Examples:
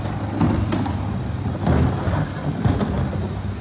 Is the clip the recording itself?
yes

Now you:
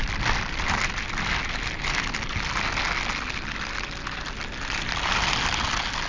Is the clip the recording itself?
yes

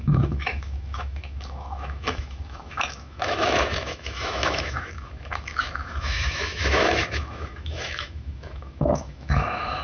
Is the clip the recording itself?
no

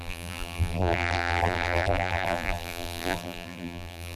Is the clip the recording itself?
no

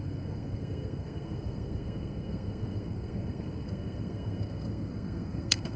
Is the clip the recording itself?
no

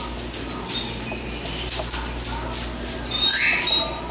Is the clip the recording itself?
yes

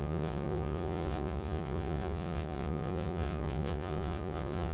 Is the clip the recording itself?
no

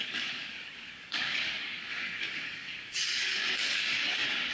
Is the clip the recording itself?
no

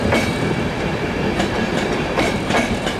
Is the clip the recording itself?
yes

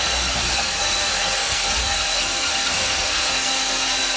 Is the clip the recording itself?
no